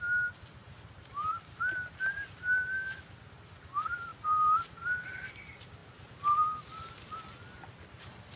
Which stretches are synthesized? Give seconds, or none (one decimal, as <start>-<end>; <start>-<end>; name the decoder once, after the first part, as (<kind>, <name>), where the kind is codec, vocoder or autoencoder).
none